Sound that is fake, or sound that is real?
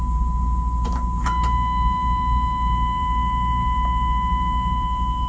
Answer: real